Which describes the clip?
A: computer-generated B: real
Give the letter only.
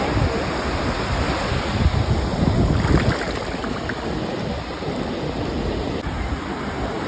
B